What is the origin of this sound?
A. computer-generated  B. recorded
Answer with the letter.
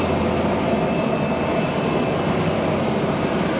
B